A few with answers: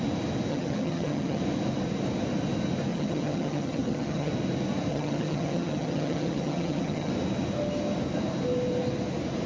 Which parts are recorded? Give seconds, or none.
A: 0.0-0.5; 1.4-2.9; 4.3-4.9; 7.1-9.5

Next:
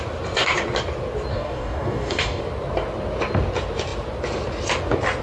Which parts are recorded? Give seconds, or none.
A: 0.0-1.3; 2.4-5.2

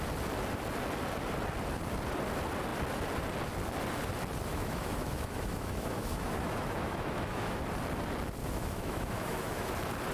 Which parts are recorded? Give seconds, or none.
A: 0.0-4.5; 7.6-8.4; 9.7-10.1